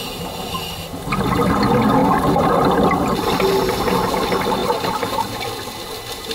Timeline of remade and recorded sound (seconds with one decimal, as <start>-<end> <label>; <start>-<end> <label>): 0.0-2.0 recorded; 2.0-2.5 remade; 2.5-4.6 recorded; 4.6-5.4 remade; 5.4-6.3 recorded